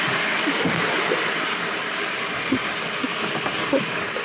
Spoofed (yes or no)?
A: no